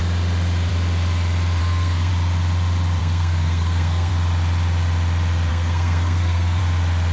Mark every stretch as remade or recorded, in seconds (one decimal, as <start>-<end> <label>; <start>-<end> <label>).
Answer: 0.0-1.6 recorded; 1.6-2.1 remade; 2.1-3.0 recorded; 3.0-4.1 remade; 4.1-5.5 recorded; 5.5-6.6 remade; 6.6-7.1 recorded